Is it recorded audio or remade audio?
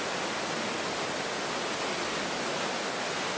recorded